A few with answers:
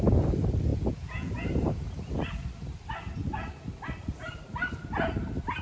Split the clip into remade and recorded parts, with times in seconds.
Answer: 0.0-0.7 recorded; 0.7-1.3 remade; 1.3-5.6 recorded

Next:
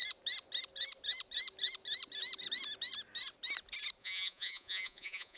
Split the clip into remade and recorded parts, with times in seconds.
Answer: 0.0-4.0 recorded; 4.0-5.4 remade

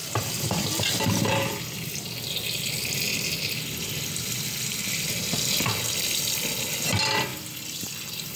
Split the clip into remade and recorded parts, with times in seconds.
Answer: 0.0-1.3 remade; 1.3-7.3 recorded; 7.3-7.9 remade; 7.9-8.4 recorded

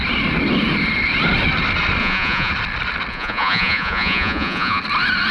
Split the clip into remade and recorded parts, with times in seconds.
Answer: 0.0-2.0 recorded; 2.0-2.5 remade; 2.5-3.1 recorded; 3.1-4.8 remade; 4.8-5.3 recorded

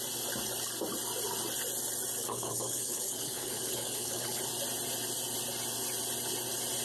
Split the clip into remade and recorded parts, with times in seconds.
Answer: 0.0-2.2 recorded; 2.2-4.4 remade; 4.4-6.8 recorded